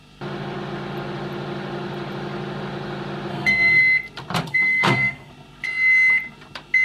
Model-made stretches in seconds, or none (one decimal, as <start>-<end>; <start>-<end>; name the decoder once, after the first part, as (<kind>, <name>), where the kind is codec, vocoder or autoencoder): 3.3-3.8 (codec, SNAC); 4.5-5.3